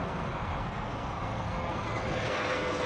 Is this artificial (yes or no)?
yes